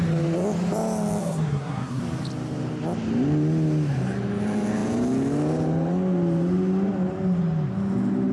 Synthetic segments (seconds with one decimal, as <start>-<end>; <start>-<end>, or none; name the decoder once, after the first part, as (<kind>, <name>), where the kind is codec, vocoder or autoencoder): 1.2-2.0 (codec, SNAC)